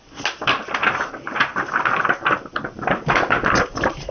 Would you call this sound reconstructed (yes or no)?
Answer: no